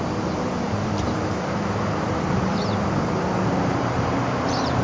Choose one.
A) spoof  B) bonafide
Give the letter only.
A